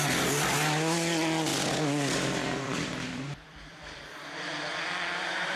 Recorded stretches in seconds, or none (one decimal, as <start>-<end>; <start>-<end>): 0.0-1.5; 4.9-5.6